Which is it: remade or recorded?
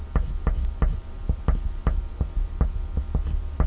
recorded